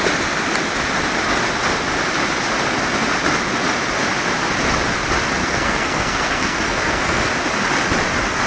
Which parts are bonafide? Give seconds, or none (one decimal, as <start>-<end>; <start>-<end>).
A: 0.0-5.4; 7.3-8.5